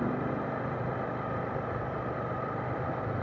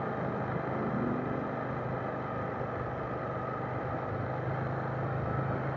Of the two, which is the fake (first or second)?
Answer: first